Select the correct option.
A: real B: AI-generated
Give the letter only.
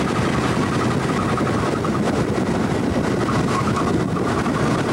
B